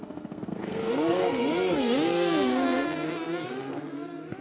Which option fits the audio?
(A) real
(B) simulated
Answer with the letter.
B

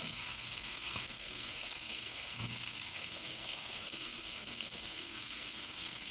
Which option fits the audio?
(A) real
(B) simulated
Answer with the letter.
B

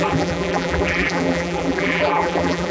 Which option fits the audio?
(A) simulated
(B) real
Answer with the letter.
A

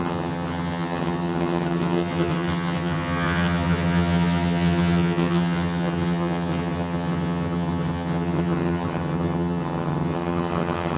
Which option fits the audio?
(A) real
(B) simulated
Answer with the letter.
B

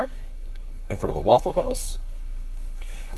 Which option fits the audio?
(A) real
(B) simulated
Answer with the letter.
B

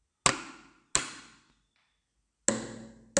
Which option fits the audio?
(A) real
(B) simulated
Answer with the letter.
A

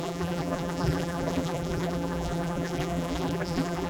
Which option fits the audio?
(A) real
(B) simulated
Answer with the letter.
B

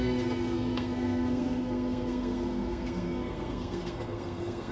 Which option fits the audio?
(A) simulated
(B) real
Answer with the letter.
A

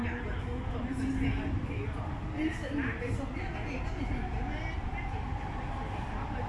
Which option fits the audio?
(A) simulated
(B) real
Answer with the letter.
B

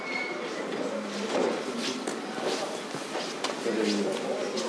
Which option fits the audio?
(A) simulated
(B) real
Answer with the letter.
B